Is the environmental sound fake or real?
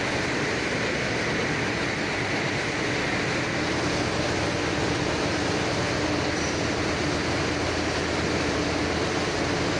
real